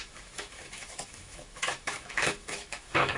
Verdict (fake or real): fake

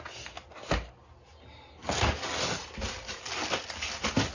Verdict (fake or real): real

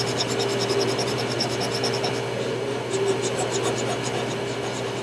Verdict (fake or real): real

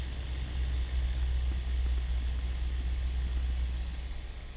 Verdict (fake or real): real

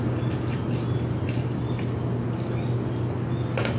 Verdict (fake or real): real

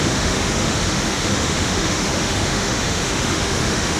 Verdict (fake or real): fake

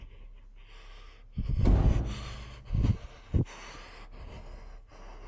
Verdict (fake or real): real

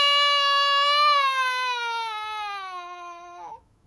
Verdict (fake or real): fake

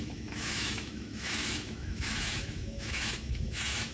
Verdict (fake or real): fake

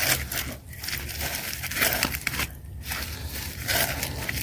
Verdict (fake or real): real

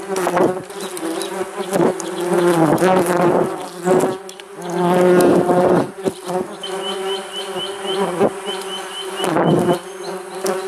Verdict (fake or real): real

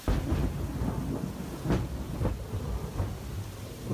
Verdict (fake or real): real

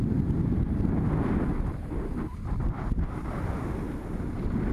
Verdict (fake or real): real